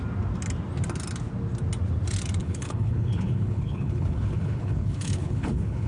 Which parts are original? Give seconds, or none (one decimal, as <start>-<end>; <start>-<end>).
0.0-2.4